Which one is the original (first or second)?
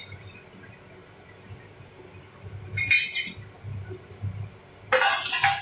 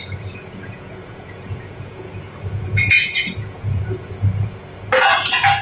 first